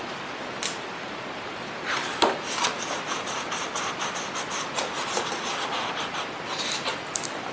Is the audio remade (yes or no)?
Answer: no